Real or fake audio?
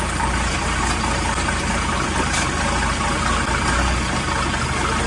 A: real